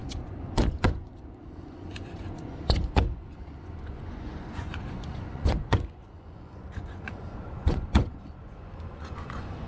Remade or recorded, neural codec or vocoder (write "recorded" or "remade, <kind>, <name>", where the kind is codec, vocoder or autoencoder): remade, vocoder, Vocos